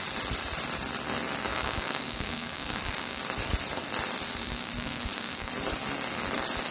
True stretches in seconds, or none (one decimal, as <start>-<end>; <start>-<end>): 0.0-1.5; 3.2-4.4; 5.5-6.7